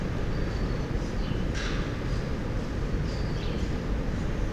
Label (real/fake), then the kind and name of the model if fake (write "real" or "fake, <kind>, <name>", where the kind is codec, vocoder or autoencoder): real